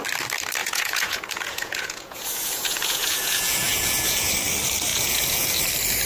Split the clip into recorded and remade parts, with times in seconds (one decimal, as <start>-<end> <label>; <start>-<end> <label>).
0.0-0.6 recorded; 0.6-4.3 remade; 4.3-4.9 recorded; 4.9-5.6 remade; 5.6-6.1 recorded